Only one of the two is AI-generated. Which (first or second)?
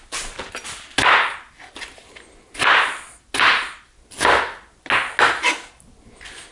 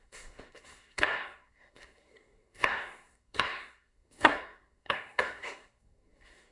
second